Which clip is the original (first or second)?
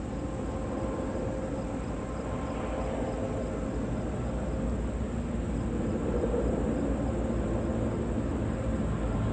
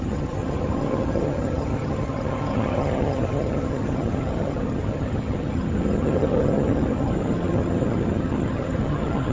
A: first